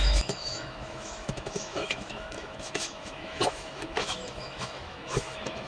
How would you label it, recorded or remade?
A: remade